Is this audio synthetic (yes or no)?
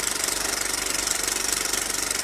yes